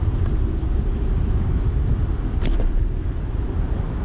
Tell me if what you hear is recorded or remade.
recorded